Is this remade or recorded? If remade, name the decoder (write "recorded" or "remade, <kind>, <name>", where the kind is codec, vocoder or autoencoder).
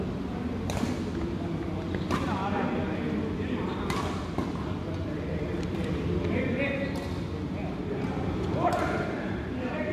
recorded